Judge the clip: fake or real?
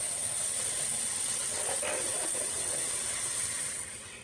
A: fake